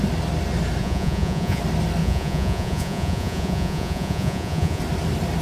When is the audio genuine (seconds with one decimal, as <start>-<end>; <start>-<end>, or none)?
0.0-0.8; 1.6-2.0; 4.8-5.4